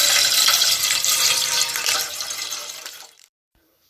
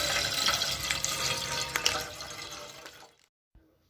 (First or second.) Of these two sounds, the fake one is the first